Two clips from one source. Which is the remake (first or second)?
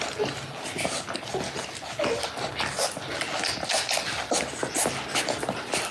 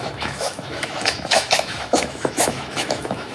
second